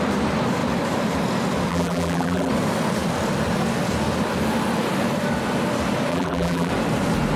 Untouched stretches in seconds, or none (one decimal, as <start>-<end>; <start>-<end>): 0.0-1.7; 2.5-6.1; 6.7-7.4